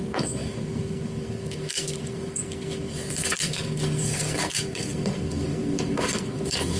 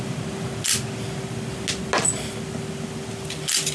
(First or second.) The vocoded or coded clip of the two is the first